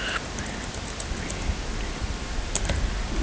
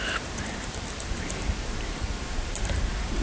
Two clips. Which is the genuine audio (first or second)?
first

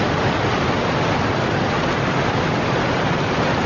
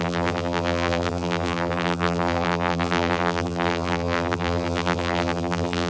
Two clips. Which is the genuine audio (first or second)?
first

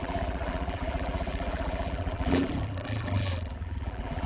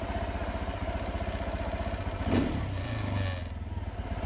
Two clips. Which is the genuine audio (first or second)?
second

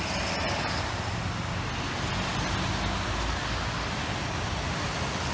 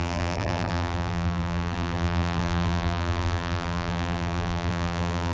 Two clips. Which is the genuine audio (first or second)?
first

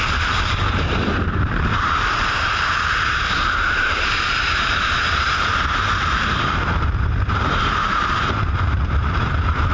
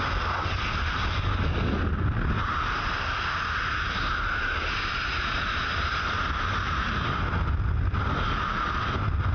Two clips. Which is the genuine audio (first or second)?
second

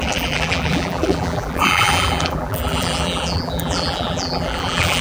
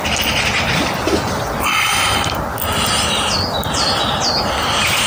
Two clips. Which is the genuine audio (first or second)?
second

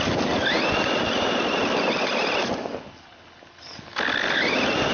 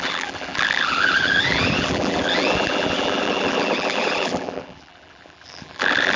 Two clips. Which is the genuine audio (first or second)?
first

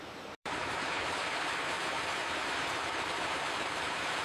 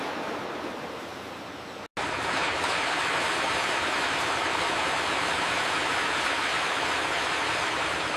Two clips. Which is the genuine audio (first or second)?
second